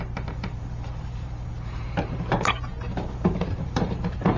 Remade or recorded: remade